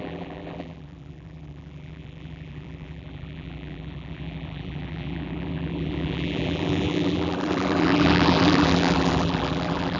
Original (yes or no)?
no